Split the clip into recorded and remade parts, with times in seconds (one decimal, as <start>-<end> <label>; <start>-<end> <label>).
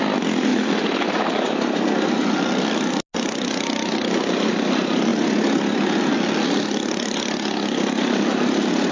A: 0.0-0.5 recorded; 0.5-1.8 remade; 1.8-8.9 recorded